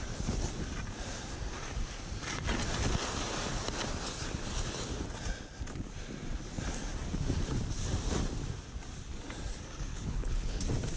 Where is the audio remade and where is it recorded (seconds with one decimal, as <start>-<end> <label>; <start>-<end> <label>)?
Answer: 0.0-9.9 recorded; 9.9-10.6 remade; 10.6-11.0 recorded